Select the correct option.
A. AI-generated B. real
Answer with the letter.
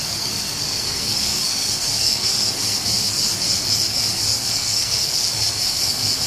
A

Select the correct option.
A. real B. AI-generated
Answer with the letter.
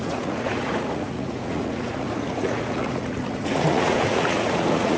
B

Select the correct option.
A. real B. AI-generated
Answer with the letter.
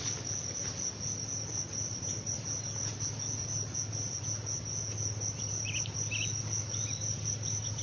A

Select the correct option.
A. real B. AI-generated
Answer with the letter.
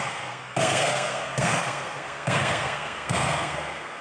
B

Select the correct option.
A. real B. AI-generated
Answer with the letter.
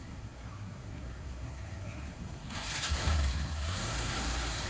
B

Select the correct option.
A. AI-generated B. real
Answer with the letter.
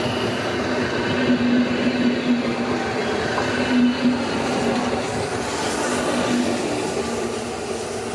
B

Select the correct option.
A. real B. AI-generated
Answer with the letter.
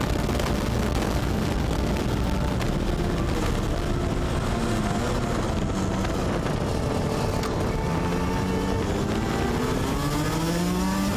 A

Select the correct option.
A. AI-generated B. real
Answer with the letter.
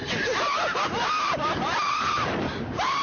A